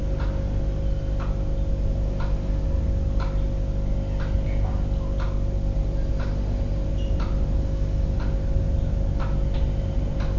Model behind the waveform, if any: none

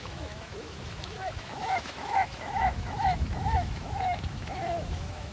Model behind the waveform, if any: autoencoder, DAC-VAE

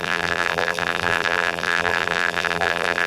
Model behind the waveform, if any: vocoder, BigVGAN v2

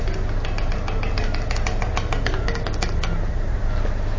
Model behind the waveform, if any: none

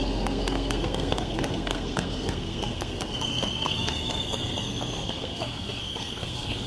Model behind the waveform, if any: codec, SNAC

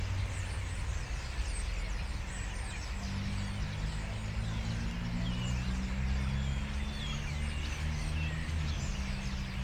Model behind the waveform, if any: none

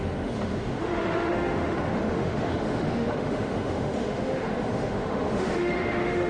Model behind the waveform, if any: autoencoder, DAC-VAE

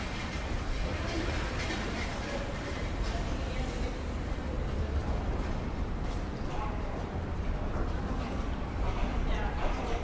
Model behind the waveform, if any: vocoder, BigVGAN v2